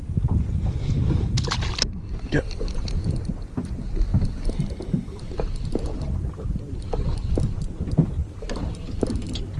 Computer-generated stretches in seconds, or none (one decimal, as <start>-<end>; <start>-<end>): none